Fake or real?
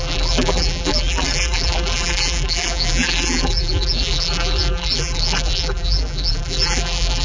fake